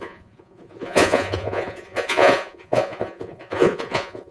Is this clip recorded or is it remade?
remade